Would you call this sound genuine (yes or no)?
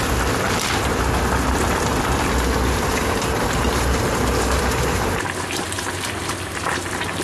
no